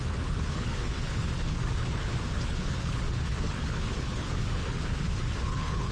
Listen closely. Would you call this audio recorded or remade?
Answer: remade